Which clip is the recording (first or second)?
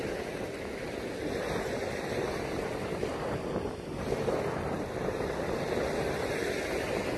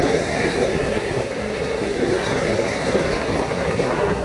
first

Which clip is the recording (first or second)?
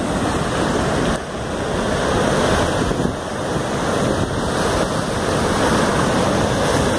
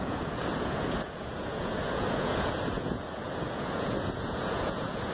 first